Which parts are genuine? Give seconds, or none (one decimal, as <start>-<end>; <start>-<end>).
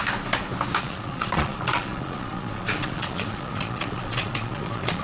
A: 0.0-0.8